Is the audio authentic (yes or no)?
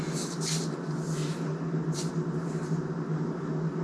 yes